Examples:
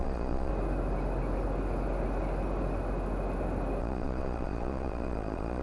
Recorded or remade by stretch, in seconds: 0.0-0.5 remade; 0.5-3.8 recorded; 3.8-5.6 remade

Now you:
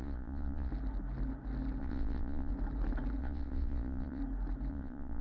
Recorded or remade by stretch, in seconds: 0.0-0.7 remade; 0.7-1.8 recorded; 1.8-2.5 remade; 2.5-3.2 recorded; 3.2-4.2 remade; 4.2-4.7 recorded; 4.7-5.2 remade

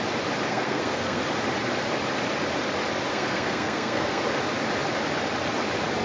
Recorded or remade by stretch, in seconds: 0.0-0.5 recorded; 0.5-1.2 remade; 1.2-3.1 recorded; 3.1-4.2 remade; 4.2-6.0 recorded

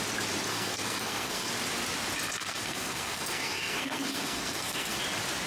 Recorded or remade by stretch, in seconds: 0.0-0.5 recorded; 0.5-1.5 remade; 1.5-2.4 recorded; 2.4-5.0 remade; 5.0-5.5 recorded

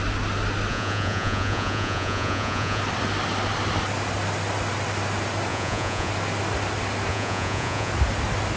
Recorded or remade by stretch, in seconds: 0.0-0.7 recorded; 0.7-2.8 remade; 2.8-5.5 recorded; 5.5-6.1 remade; 6.1-7.1 recorded; 7.1-7.9 remade; 7.9-8.6 recorded

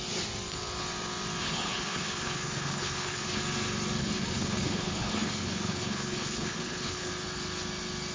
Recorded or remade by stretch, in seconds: 0.0-1.4 recorded; 1.4-3.4 remade; 3.4-4.0 recorded; 4.0-7.1 remade; 7.1-8.1 recorded

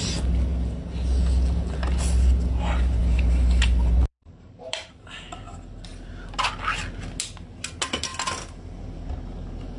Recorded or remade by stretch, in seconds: 0.0-4.0 recorded; 4.0-4.9 remade; 4.9-9.8 recorded